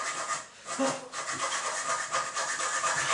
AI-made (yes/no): no